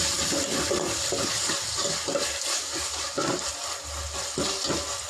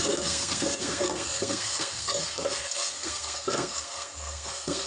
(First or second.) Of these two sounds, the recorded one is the first